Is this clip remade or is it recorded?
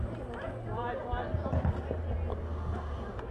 recorded